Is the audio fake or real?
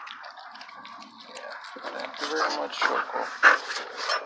real